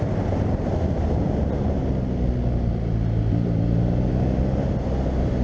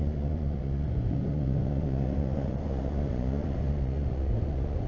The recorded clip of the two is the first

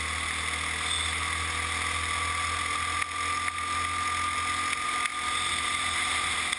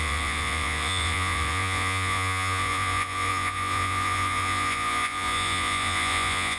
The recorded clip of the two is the first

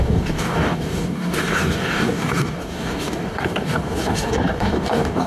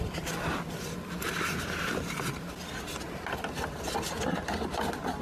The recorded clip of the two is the second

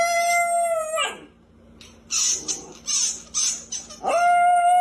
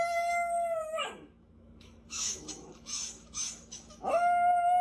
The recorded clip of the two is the first